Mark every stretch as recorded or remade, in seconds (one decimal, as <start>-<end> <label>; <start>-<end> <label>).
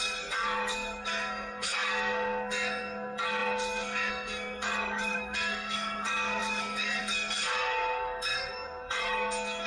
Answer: 0.0-9.7 remade